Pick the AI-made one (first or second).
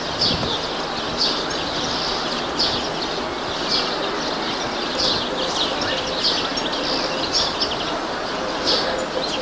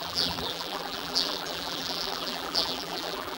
second